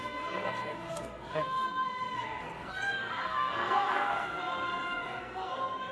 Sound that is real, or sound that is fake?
fake